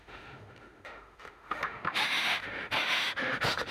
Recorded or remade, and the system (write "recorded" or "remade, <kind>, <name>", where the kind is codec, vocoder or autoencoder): remade, autoencoder, DAC-VAE